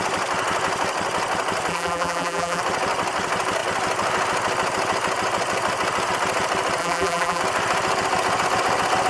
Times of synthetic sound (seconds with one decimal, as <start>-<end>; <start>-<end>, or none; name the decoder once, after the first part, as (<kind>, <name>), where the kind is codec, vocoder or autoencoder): 1.7-2.6 (vocoder, BigVGAN v2); 6.8-7.4